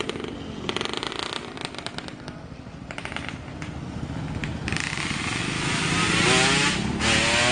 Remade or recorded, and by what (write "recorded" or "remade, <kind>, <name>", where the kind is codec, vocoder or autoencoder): recorded